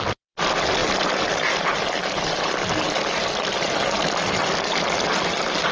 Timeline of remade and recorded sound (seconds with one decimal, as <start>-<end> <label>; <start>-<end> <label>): 0.0-0.8 remade; 0.8-1.8 recorded; 1.8-3.0 remade; 3.0-5.7 recorded